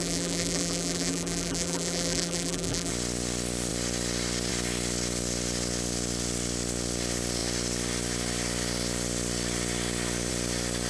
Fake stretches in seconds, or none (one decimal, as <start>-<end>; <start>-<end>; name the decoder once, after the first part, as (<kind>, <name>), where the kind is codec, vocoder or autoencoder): 0.0-2.9 (vocoder, BigVGAN v2)

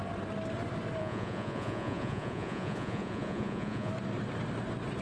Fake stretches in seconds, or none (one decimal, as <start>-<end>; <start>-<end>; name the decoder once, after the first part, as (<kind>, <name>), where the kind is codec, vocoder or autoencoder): 1.0-3.9 (vocoder, Vocos)

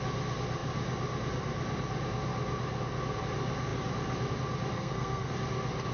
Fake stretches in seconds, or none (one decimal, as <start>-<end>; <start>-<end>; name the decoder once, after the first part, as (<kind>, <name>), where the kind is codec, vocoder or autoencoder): 4.7-5.3 (codec, SNAC)

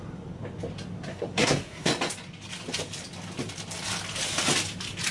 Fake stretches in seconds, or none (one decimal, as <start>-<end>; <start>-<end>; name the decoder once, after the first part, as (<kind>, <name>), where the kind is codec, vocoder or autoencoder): 1.1-1.9 (codec, SNAC)

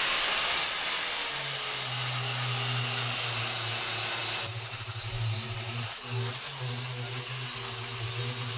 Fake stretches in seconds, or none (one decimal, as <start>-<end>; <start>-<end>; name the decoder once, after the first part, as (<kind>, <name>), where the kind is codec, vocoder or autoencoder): none

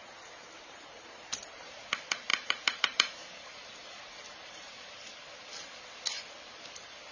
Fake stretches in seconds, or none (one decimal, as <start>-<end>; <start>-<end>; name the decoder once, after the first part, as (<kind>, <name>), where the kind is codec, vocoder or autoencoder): 0.0-1.8 (vocoder, BigVGAN v2); 2.3-4.9

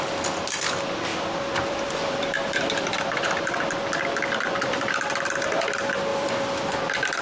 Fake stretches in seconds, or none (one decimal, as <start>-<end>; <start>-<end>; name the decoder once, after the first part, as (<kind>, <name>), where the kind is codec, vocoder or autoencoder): 1.1-3.2 (vocoder, BigVGAN v2); 6.1-6.8

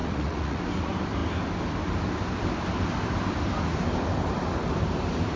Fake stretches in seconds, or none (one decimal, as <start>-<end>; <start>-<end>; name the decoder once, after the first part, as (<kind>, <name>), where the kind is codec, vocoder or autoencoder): 0.0-0.6 (vocoder, Vocos)